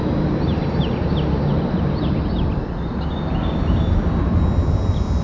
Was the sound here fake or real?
real